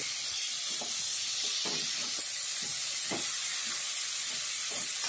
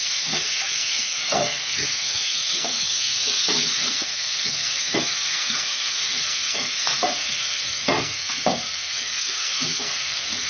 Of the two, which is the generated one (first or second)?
second